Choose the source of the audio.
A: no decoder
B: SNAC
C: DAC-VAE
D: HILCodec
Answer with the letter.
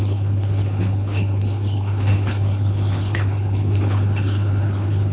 D